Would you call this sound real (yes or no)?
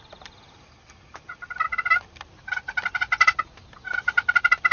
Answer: yes